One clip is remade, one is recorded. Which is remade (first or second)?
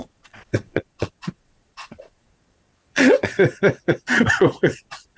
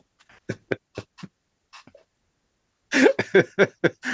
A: first